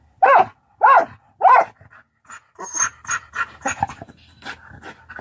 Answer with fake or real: real